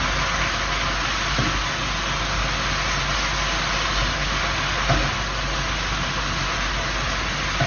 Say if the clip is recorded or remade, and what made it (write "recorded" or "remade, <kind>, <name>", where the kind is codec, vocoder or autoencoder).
recorded